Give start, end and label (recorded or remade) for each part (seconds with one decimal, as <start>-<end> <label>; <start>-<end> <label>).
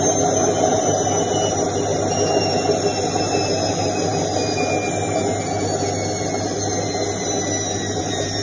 0.0-8.4 recorded